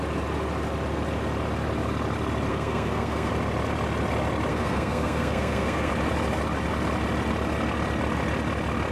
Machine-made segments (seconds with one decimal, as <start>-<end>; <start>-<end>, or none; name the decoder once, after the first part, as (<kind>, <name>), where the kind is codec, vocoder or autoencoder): 2.5-3.3 (codec, SNAC); 4.5-5.9

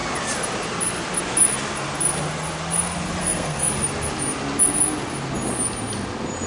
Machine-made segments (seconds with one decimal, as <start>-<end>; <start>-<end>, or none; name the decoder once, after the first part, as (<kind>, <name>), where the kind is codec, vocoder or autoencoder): 3.2-3.7 (codec, SNAC)

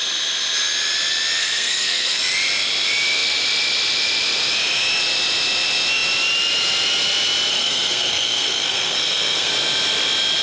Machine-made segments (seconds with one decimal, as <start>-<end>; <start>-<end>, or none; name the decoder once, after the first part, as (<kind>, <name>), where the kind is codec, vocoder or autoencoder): 1.4-2.2 (codec, SNAC); 7.5-9.5

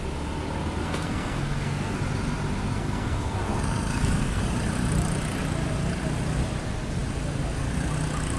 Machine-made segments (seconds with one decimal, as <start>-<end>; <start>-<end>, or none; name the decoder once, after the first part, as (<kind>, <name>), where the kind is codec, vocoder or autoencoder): 0.8-2.0 (codec, SNAC); 2.7-4.4

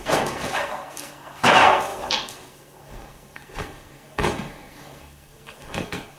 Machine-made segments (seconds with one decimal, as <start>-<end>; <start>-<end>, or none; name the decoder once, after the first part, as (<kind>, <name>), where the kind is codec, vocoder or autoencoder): 0.0-6.2 (codec, SNAC)

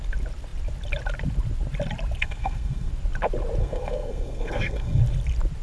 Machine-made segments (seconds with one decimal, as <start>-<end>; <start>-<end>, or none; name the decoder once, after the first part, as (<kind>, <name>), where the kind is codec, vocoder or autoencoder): 2.2-2.9 (codec, SNAC); 3.6-5.0

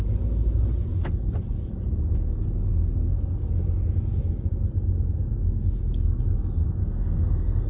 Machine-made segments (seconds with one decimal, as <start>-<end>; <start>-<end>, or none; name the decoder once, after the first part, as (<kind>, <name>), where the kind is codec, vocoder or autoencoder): 6.8-7.7 (codec, SNAC)